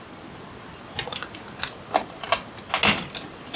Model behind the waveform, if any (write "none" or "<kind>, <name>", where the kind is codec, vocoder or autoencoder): none